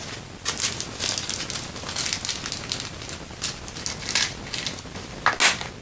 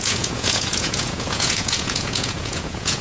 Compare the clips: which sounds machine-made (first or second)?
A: second